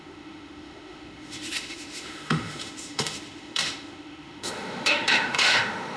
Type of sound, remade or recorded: remade